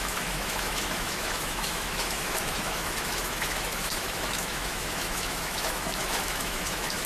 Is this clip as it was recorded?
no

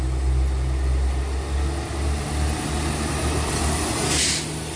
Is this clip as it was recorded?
yes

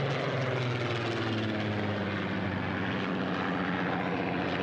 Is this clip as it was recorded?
yes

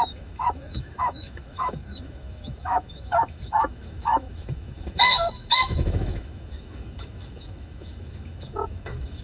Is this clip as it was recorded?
no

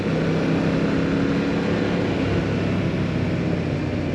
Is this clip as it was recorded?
yes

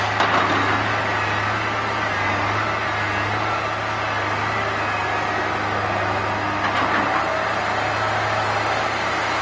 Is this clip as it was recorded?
yes